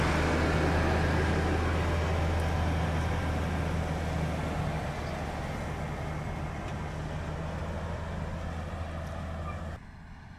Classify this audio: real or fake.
real